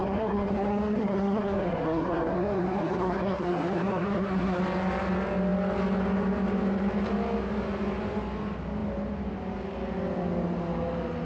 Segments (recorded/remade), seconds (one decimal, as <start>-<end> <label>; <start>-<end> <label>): 0.0-4.6 remade; 4.6-11.2 recorded

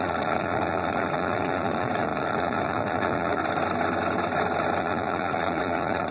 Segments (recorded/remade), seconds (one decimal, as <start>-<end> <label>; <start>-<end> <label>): 0.0-3.4 remade; 3.4-4.8 recorded; 4.8-6.1 remade

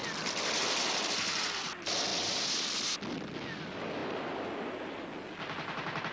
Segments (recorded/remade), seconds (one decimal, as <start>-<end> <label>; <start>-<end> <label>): 0.0-6.1 recorded

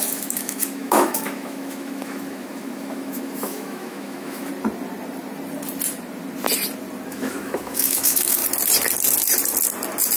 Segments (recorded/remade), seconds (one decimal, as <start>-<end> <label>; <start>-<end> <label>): 0.0-4.5 remade; 4.5-7.1 recorded; 7.1-8.4 remade; 8.4-10.2 recorded